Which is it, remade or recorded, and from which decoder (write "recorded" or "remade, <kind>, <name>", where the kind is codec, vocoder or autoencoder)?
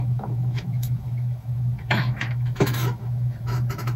remade, autoencoder, DAC-VAE